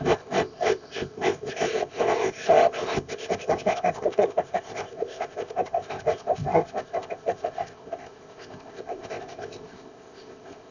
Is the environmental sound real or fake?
fake